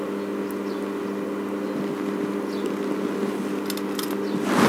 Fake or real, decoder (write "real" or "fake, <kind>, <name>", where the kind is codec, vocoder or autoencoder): real